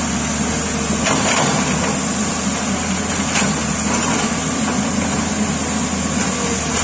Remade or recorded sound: recorded